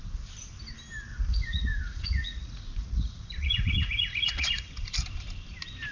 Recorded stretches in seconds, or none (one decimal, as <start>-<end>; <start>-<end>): 0.0-1.1; 4.6-5.9

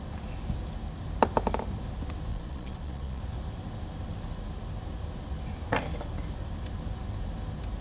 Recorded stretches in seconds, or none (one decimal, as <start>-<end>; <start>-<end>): 0.0-2.3; 3.2-7.8